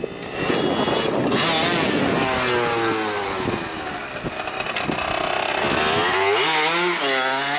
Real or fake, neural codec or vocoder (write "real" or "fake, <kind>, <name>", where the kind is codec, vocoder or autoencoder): real